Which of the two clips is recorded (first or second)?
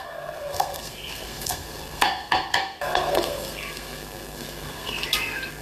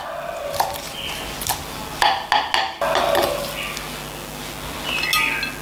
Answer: second